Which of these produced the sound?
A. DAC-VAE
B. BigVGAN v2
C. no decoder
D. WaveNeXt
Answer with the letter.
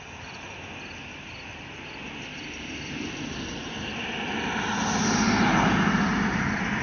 C